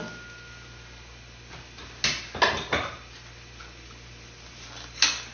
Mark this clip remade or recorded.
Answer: recorded